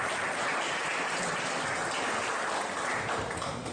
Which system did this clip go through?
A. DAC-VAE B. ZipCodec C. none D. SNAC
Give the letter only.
C